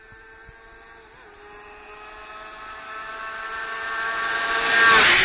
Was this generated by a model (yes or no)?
no